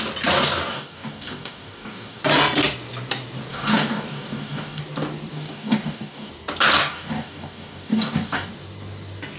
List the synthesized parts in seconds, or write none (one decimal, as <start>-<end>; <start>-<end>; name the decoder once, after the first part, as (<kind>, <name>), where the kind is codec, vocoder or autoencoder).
0.7-2.2 (codec, DAC); 3.5-4.8; 5.3-6.3; 6.8-8.5